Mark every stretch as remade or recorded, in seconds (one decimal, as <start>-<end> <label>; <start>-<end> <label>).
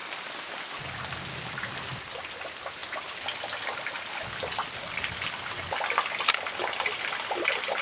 0.0-7.8 recorded